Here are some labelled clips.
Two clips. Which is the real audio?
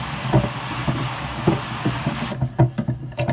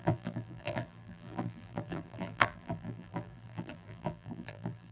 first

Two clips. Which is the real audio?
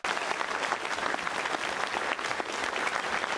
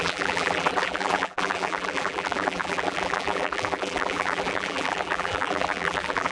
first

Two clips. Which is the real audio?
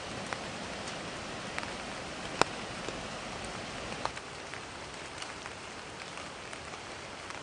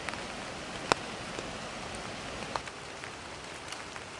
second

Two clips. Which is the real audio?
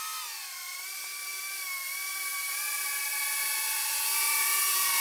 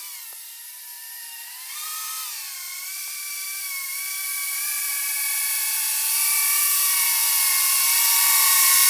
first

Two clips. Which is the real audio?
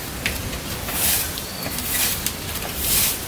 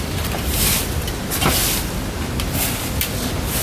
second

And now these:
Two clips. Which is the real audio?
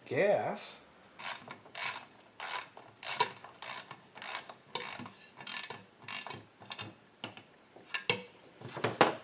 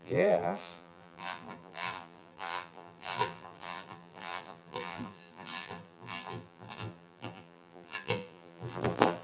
first